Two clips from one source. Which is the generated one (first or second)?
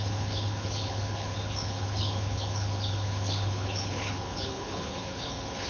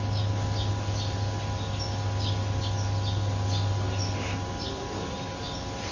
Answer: first